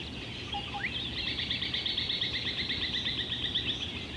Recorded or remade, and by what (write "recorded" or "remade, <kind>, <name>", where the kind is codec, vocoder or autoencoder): recorded